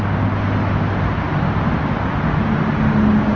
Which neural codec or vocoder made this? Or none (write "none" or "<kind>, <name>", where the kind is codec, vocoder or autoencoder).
none